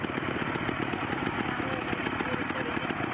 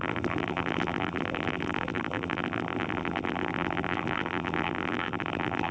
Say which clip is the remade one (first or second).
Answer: second